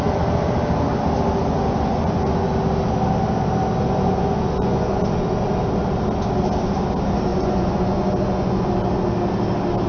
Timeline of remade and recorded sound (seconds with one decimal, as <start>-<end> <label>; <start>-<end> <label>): 0.0-1.5 recorded; 1.5-2.5 remade; 2.5-3.8 recorded; 3.8-5.0 remade; 5.0-7.3 recorded; 7.3-8.7 remade; 8.7-9.9 recorded